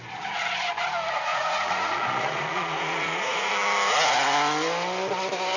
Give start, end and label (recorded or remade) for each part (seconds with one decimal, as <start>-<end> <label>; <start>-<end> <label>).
0.0-1.3 recorded; 1.3-3.5 remade; 3.5-5.6 recorded